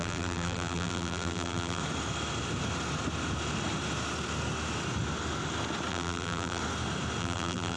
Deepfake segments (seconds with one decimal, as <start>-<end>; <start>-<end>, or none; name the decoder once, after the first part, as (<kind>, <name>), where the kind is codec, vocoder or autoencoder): 0.0-1.8 (vocoder, BigVGAN v2); 5.9-6.6; 7.2-7.8